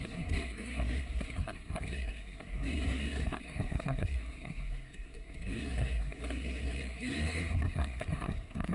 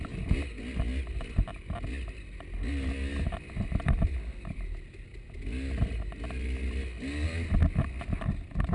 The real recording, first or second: second